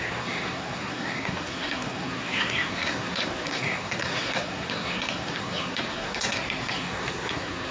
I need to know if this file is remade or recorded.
remade